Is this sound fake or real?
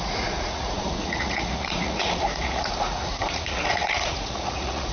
fake